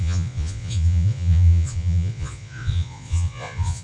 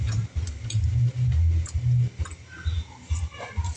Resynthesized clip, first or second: first